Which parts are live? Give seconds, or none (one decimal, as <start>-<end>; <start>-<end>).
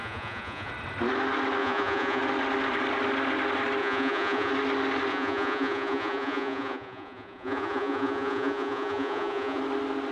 0.7-1.6; 2.2-3.8; 4.5-5.1; 9.6-10.1